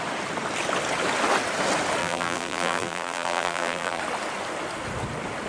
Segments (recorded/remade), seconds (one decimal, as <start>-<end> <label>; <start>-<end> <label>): 0.0-2.0 recorded; 2.0-4.0 remade; 4.0-5.5 recorded